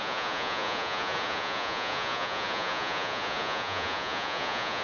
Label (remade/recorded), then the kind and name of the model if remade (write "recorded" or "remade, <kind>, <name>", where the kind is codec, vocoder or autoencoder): remade, vocoder, Vocos